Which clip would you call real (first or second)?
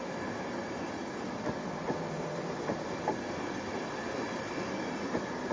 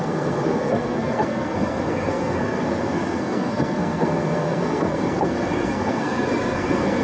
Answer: first